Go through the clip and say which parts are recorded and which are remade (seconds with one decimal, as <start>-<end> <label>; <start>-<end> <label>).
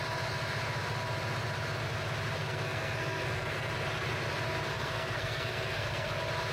0.0-2.4 recorded; 2.4-3.7 remade; 3.7-4.7 recorded; 4.7-6.1 remade; 6.1-6.5 recorded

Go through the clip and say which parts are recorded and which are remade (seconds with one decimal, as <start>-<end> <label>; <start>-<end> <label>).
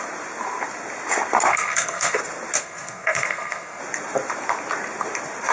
0.0-1.5 recorded; 1.5-2.2 remade; 2.2-2.6 recorded; 2.6-3.8 remade; 3.8-5.5 recorded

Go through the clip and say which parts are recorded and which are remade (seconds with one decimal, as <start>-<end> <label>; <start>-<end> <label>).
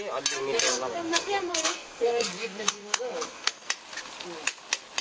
0.0-0.7 recorded; 0.7-3.7 remade; 3.7-5.0 recorded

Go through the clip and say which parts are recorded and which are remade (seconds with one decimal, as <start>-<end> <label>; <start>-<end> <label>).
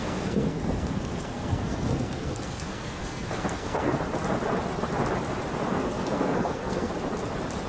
0.0-4.0 remade; 4.0-5.7 recorded; 5.7-6.9 remade; 6.9-7.7 recorded